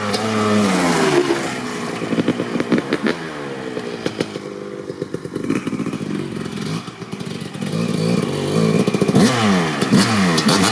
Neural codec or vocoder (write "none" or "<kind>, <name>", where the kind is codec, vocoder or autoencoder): none